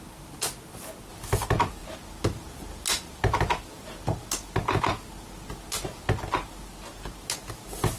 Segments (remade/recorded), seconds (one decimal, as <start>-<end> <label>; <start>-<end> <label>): 0.0-8.0 recorded